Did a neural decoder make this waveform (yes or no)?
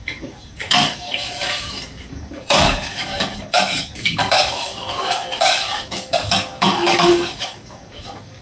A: yes